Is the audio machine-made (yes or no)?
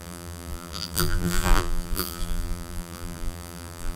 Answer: yes